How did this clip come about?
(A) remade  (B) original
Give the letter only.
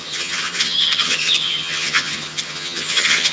A